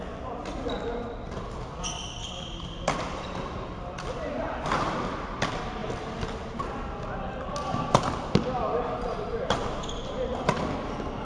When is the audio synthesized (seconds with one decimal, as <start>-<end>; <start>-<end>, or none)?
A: none